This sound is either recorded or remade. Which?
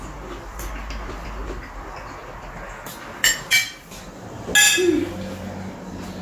recorded